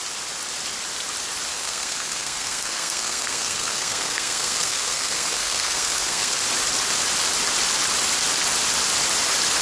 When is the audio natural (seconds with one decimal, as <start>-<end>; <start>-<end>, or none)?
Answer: 0.0-1.5; 6.4-9.6